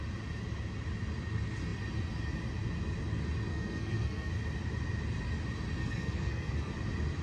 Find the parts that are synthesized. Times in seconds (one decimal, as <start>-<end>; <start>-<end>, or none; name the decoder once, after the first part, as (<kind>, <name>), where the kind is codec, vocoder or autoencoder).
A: 3.5-4.3 (codec, SNAC); 5.8-6.7